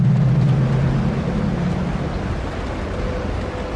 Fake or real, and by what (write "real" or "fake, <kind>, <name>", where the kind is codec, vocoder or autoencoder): real